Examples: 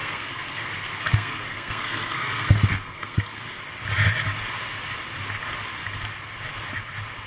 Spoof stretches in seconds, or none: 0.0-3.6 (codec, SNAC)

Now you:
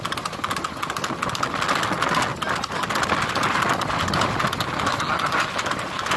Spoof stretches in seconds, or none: none